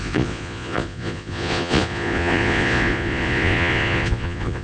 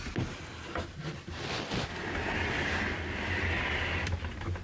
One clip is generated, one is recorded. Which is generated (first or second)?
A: first